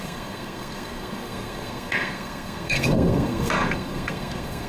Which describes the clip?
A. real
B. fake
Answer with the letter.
B